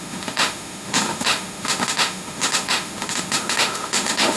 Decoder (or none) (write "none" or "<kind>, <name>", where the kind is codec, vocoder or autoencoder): autoencoder, DAC-VAE